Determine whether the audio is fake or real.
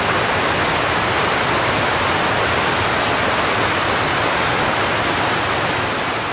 real